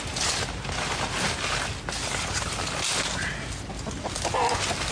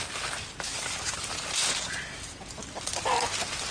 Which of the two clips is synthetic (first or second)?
second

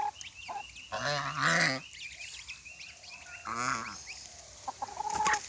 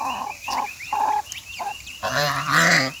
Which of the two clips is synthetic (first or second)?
second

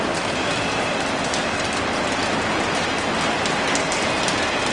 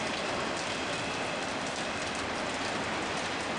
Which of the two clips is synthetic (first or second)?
second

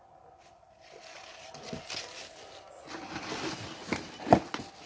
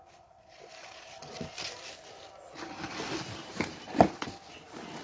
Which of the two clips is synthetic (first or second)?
second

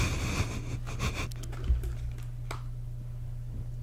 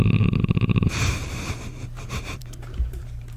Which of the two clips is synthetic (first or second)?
second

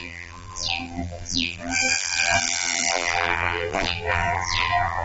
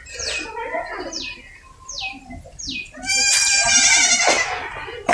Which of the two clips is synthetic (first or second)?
first